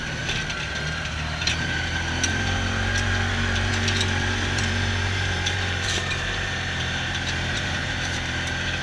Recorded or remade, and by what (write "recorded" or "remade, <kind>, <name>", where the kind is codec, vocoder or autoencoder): remade, vocoder, BigVGAN v2